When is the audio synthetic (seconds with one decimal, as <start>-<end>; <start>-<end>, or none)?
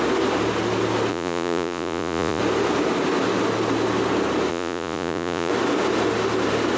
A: 1.1-2.4; 4.5-5.5